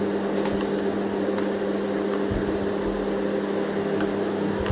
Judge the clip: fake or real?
real